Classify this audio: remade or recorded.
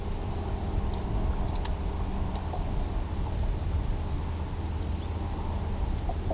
recorded